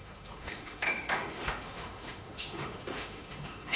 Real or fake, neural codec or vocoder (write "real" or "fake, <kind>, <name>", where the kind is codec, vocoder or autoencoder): fake, autoencoder, DAC-VAE